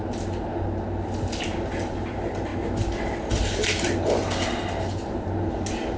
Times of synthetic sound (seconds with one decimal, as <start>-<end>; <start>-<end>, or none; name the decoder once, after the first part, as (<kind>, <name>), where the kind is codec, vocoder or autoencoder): none